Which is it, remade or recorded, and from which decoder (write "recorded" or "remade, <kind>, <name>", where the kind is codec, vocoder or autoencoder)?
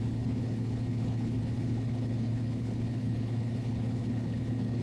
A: remade, codec, HILCodec